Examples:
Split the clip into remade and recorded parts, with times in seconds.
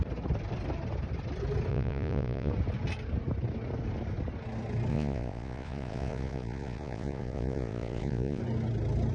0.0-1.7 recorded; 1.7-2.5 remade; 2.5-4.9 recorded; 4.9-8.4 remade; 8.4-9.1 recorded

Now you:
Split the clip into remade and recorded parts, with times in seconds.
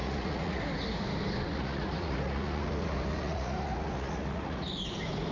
0.0-0.6 remade; 0.6-1.5 recorded; 1.5-4.7 remade; 4.7-5.3 recorded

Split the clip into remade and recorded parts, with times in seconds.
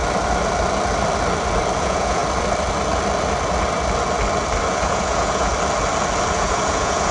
0.0-1.8 recorded; 1.8-2.2 remade; 2.2-4.7 recorded; 4.7-5.5 remade; 5.5-6.3 recorded; 6.3-7.1 remade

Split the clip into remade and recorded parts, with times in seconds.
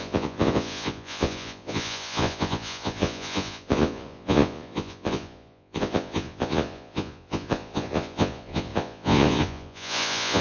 0.0-10.4 remade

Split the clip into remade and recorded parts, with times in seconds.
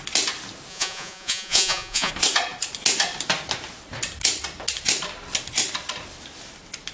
0.0-0.7 recorded; 0.7-2.1 remade; 2.1-6.9 recorded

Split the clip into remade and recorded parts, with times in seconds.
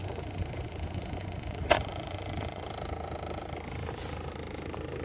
0.0-2.6 remade; 2.6-5.0 recorded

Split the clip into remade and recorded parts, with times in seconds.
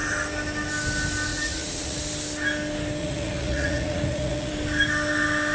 0.0-1.3 recorded; 1.3-2.0 remade; 2.0-3.0 recorded; 3.0-4.5 remade; 4.5-5.5 recorded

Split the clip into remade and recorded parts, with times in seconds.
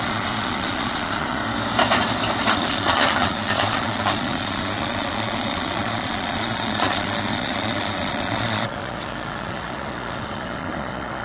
0.0-1.4 remade; 1.4-2.5 recorded; 2.5-11.2 remade